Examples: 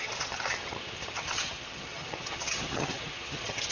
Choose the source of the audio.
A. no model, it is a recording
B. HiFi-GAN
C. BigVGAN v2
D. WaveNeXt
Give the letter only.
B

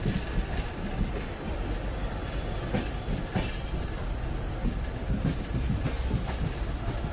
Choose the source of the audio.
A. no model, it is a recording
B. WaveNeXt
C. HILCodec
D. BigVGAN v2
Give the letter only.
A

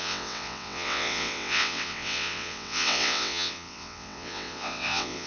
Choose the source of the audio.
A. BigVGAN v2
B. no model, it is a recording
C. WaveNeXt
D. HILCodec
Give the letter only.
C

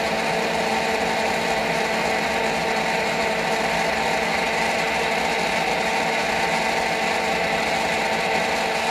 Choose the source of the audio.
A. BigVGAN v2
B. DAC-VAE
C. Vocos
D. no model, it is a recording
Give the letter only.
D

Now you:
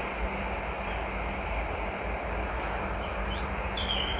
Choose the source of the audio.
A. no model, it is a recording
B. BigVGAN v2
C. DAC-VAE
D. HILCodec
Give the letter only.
A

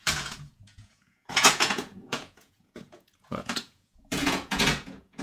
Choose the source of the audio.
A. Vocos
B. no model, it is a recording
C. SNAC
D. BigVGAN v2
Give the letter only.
A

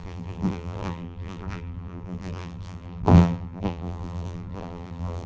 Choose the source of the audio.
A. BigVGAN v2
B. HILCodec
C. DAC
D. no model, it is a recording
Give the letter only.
A